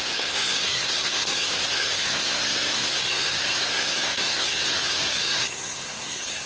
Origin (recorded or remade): remade